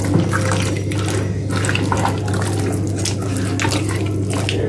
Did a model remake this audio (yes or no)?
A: no